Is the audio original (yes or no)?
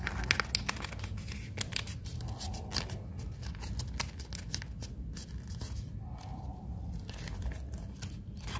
yes